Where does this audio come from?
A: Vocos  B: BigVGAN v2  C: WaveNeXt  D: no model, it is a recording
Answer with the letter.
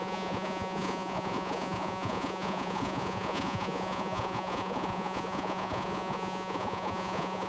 A